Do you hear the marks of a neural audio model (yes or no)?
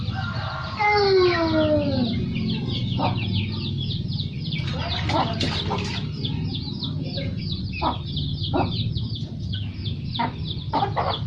no